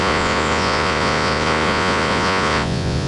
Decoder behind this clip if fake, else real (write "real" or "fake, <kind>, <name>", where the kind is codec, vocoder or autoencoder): fake, vocoder, Vocos